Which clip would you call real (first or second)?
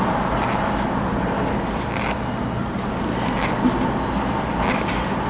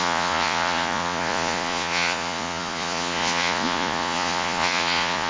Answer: first